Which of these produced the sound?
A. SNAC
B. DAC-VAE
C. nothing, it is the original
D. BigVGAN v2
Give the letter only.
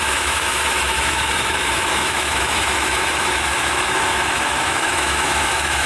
B